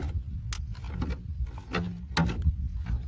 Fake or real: real